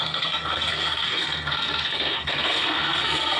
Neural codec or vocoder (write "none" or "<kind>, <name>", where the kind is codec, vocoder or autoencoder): codec, SNAC